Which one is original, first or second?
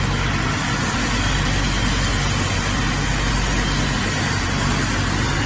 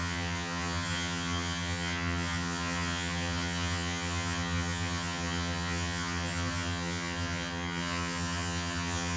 first